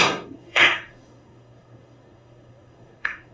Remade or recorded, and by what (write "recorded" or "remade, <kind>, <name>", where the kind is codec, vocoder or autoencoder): remade, codec, SNAC